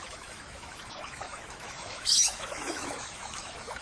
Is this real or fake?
fake